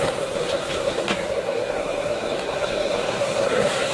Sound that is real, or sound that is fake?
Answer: fake